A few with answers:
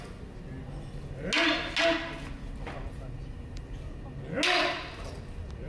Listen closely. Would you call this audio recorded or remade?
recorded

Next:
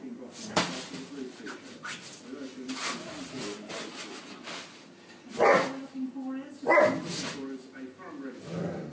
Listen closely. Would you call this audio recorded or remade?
recorded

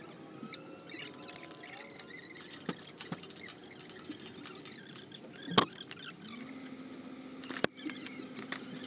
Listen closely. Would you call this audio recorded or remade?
recorded